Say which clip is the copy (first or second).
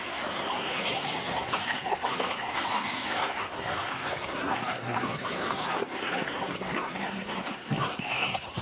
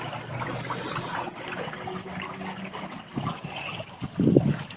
first